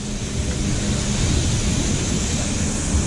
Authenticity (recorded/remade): recorded